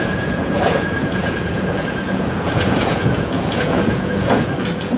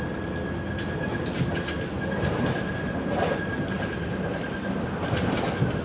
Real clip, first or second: second